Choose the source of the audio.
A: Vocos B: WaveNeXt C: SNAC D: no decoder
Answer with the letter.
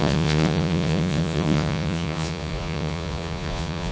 A